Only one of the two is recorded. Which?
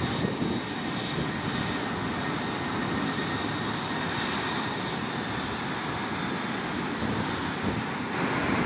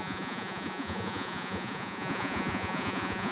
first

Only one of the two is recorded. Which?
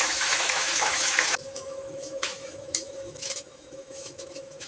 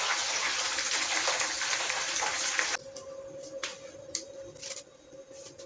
second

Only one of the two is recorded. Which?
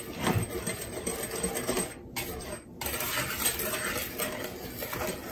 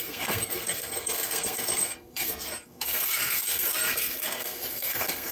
first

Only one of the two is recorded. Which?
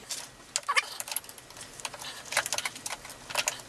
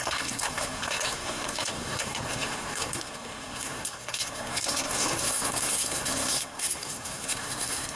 first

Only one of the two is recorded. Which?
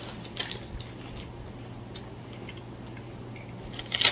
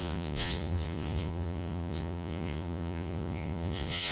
first